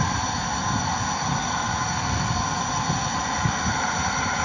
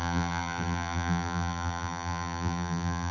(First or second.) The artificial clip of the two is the second